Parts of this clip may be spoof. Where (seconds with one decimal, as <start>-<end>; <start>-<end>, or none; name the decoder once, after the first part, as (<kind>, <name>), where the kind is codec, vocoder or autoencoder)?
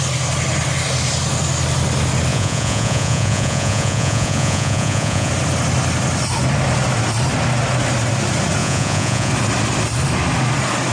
2.3-5.3 (vocoder, Vocos); 8.6-9.3